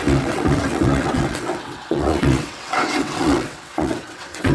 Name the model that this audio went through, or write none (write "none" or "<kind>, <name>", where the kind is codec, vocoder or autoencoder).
vocoder, WaveNeXt